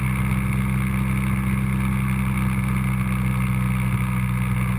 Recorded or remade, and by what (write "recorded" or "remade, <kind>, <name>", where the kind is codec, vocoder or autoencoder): recorded